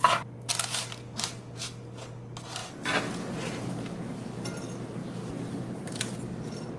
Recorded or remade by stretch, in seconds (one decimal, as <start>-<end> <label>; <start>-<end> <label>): 0.0-2.6 recorded; 2.6-3.7 remade; 3.7-5.0 recorded; 5.0-6.2 remade; 6.2-6.8 recorded